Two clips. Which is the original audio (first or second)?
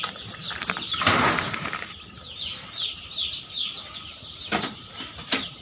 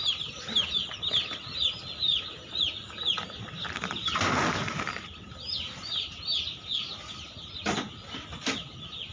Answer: second